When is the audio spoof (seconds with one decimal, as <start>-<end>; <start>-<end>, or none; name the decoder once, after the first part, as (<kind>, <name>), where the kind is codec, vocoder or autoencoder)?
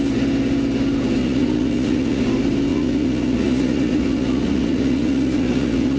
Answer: 1.2-2.2 (vocoder, Vocos); 2.7-6.0